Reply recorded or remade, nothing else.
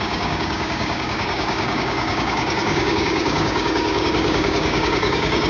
remade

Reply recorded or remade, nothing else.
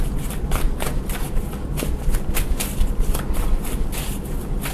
recorded